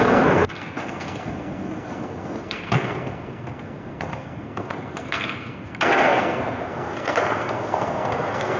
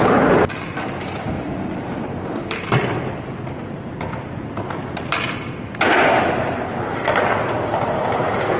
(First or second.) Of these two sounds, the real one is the second